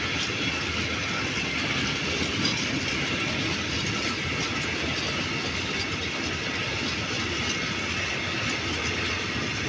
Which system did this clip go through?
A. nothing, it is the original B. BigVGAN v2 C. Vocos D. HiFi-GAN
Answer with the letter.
A